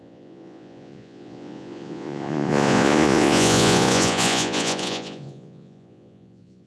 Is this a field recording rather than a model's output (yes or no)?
no